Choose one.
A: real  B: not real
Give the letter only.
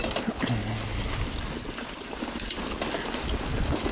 A